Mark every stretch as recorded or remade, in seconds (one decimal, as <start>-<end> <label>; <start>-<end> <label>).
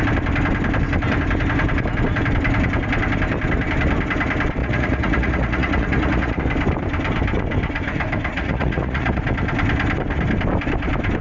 0.0-4.6 recorded; 4.6-6.4 remade; 6.4-8.3 recorded; 8.3-9.2 remade; 9.2-11.2 recorded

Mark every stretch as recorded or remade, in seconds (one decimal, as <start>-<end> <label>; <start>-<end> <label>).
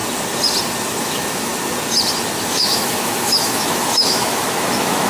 0.0-1.0 recorded; 1.0-1.5 remade; 1.5-2.4 recorded; 2.4-5.1 remade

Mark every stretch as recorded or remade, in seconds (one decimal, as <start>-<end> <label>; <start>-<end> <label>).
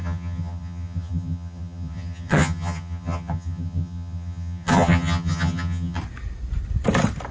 0.0-6.0 remade; 6.0-7.3 recorded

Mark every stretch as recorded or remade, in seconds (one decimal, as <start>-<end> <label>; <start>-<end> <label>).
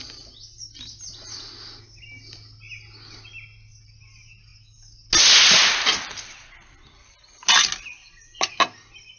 0.0-9.2 recorded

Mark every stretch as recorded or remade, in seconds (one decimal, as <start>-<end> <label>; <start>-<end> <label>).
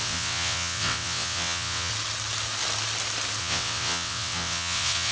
0.0-1.9 remade; 1.9-3.4 recorded; 3.4-5.1 remade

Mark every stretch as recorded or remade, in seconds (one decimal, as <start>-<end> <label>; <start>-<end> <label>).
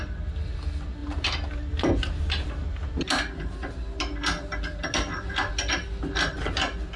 0.0-7.0 recorded